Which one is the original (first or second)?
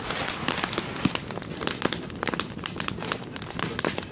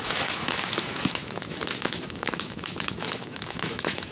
first